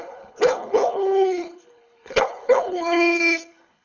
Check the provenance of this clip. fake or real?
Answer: fake